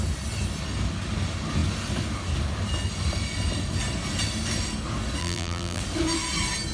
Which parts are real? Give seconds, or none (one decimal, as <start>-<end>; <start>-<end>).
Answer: 0.0-5.2; 5.8-6.7